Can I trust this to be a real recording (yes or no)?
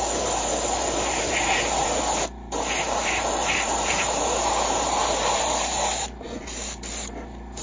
no